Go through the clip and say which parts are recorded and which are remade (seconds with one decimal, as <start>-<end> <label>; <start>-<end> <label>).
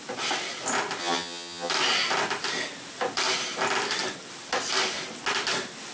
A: 0.0-1.0 recorded; 1.0-1.7 remade; 1.7-5.9 recorded